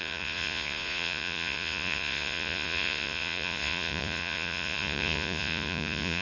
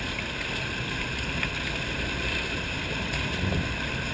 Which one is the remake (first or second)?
first